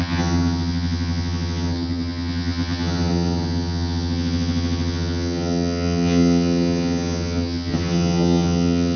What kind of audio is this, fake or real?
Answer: fake